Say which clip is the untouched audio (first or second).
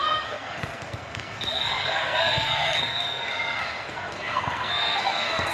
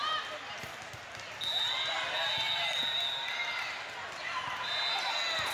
second